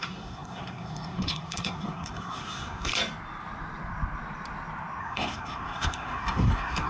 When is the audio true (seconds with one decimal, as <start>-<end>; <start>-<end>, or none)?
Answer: 2.9-5.0